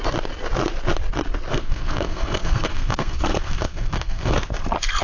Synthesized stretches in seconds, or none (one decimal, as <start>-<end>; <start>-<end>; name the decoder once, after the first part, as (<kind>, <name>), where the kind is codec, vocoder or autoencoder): 1.5-4.5 (codec, SNAC)